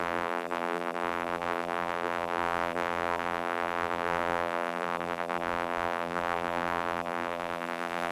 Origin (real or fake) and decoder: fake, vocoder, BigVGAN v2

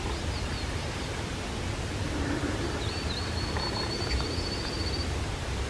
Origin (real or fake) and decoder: real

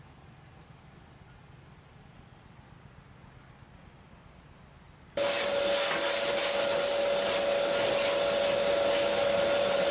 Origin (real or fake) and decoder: real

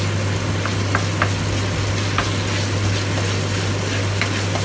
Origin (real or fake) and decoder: real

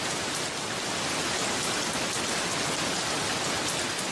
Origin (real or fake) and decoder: real